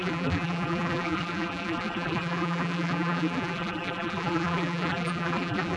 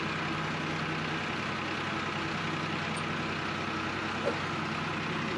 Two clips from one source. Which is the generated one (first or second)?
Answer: first